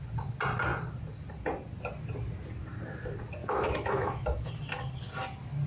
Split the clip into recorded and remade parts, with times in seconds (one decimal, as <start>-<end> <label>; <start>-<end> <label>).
0.0-3.4 recorded; 3.4-4.5 remade; 4.5-5.7 recorded